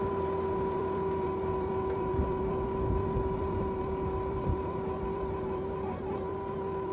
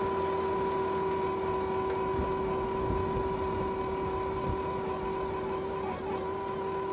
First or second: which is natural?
second